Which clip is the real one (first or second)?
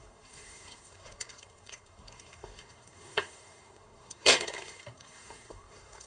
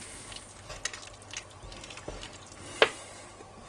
second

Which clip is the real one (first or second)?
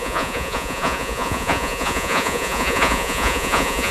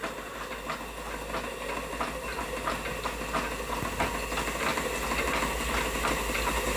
second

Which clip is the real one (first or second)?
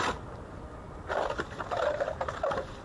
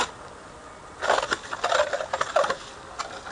second